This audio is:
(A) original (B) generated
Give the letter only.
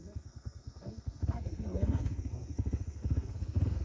B